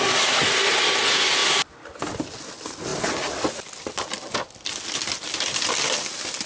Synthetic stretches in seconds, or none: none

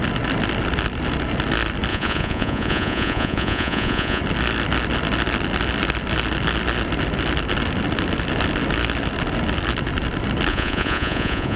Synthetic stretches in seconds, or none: 1.9-4.2 (vocoder, Vocos); 10.5-11.6

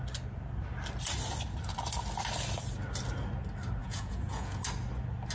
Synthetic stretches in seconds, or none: 3.8-4.6 (vocoder, Vocos)

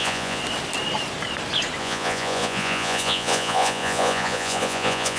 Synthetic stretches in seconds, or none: 0.0-0.4 (vocoder, Vocos); 1.8-5.2

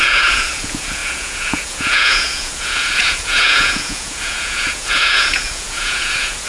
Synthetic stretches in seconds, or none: 0.0-6.5 (vocoder, Vocos)

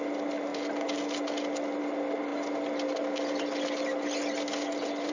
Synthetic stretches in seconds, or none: none

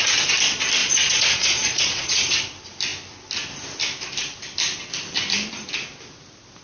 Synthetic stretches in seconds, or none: 0.8-2.2 (vocoder, Vocos)

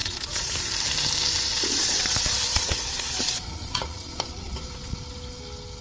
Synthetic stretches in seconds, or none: 0.0-0.5 (vocoder, Vocos); 1.5-5.0